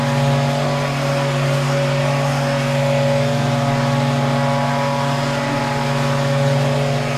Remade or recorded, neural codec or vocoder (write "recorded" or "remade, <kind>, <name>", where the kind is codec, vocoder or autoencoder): recorded